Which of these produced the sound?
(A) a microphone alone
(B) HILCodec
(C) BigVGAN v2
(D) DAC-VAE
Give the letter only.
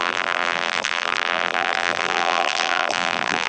C